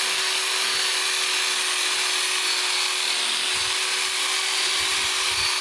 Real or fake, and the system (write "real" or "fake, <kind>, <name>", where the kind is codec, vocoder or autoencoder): real